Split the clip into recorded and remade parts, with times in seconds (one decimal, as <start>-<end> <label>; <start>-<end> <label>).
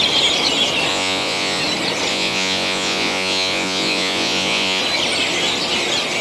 0.0-0.9 recorded; 0.9-1.6 remade; 1.6-2.1 recorded; 2.1-4.8 remade; 4.8-6.2 recorded